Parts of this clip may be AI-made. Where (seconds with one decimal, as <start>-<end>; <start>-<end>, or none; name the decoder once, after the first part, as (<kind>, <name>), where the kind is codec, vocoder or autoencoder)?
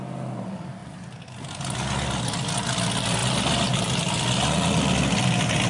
none